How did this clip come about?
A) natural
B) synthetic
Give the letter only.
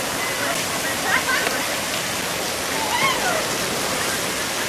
A